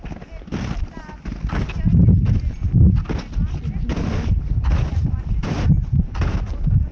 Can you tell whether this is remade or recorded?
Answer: recorded